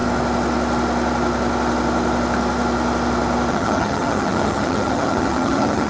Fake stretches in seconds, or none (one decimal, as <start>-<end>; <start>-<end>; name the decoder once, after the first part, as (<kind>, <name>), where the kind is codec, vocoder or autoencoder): 3.5-5.9 (vocoder, HiFi-GAN)